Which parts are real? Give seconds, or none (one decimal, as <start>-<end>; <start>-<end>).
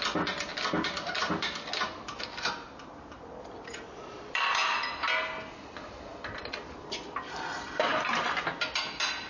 0.0-9.3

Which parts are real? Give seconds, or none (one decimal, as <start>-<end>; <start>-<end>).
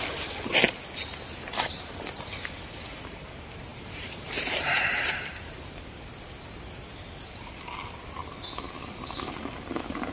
0.0-3.7; 5.2-10.1